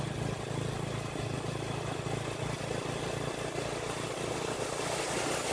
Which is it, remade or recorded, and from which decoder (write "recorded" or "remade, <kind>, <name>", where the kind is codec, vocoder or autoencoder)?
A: recorded